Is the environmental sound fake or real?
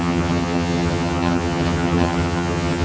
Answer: fake